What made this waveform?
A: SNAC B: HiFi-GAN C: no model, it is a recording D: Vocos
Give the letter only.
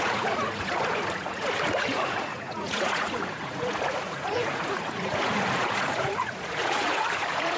D